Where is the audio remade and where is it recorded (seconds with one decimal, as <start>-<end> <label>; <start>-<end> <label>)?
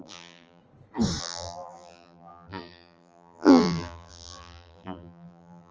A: 0.0-0.6 remade; 0.6-1.2 recorded; 1.2-5.7 remade